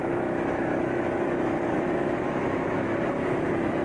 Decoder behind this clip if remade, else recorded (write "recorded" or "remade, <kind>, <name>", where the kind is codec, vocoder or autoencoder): remade, autoencoder, DAC-VAE